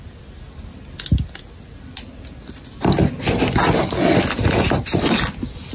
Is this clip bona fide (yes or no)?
yes